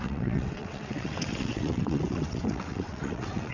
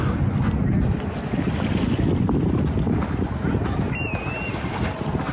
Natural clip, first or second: second